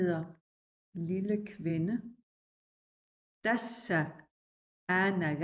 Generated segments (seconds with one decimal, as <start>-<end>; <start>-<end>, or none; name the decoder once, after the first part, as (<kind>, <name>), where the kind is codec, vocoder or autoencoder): none